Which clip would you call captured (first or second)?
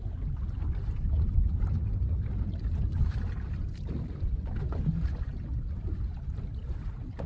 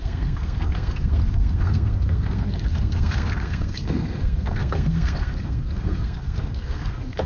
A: first